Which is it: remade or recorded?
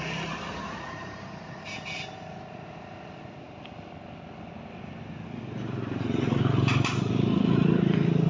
recorded